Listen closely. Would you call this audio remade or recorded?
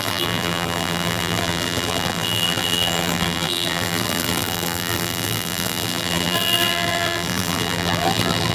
remade